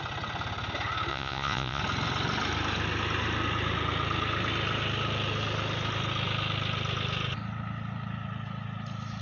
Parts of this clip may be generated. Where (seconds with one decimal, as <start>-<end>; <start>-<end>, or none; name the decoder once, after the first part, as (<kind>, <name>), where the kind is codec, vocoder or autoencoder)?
1.1-1.8 (vocoder, Vocos)